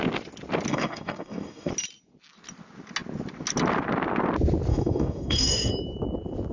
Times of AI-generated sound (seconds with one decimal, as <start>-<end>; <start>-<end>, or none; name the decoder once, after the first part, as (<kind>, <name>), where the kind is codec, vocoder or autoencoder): 0.7-1.7 (codec, DAC); 4.7-5.7